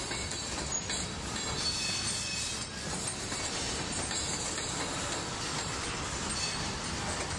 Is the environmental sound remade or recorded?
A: recorded